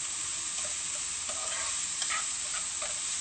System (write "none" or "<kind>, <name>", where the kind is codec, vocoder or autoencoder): none